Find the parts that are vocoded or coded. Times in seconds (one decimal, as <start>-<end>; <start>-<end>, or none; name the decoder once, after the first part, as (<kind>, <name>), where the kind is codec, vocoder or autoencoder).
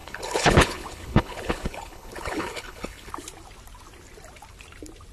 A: 0.0-3.1 (codec, HILCodec)